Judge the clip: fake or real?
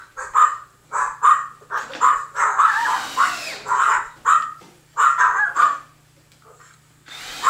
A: fake